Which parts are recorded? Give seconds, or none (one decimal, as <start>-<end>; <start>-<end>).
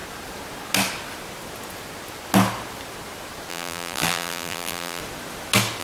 0.0-3.5; 5.0-5.8